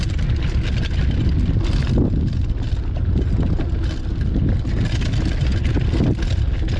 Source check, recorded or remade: recorded